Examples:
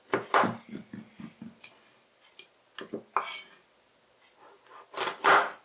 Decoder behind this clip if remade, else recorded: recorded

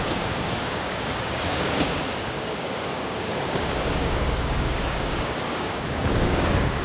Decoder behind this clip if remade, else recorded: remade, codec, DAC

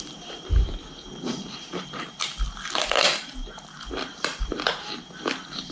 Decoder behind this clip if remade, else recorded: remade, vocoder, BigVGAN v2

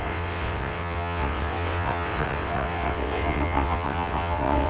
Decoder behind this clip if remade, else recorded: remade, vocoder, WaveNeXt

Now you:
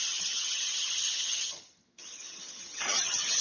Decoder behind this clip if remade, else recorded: remade, vocoder, HiFi-GAN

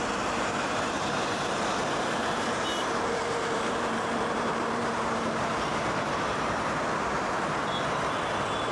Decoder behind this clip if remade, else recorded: remade, vocoder, BigVGAN v2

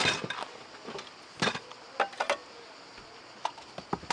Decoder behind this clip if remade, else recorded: recorded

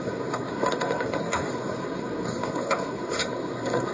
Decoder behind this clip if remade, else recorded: remade, codec, SNAC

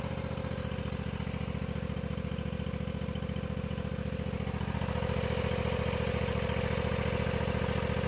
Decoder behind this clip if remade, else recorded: recorded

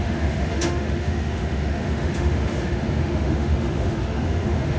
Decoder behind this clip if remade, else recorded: remade, autoencoder, DAC-VAE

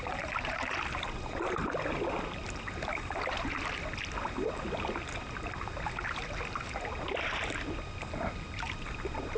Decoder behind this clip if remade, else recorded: recorded